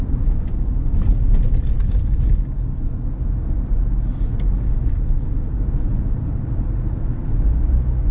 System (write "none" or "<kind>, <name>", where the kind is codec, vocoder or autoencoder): none